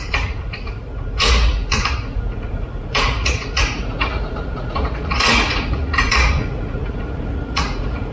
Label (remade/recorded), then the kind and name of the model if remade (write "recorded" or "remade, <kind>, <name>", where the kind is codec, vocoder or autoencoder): remade, vocoder, Vocos